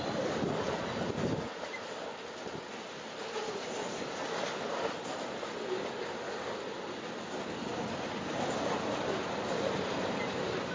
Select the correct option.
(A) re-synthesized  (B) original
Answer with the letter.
B